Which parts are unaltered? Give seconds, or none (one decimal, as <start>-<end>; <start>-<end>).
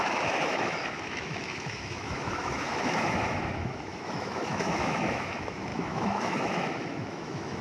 none